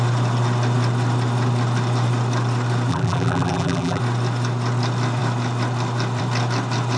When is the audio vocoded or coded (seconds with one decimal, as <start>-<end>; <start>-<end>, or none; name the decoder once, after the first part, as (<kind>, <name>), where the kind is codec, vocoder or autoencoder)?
2.9-4.0 (vocoder, BigVGAN v2)